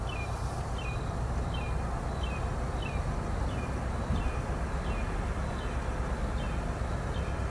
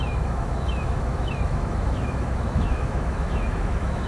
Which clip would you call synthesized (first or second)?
second